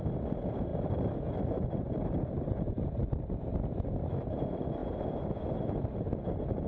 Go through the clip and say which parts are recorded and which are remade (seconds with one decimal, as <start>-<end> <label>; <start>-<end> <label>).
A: 0.0-0.7 recorded; 0.7-1.3 remade; 1.3-3.0 recorded; 3.0-4.1 remade; 4.1-6.7 recorded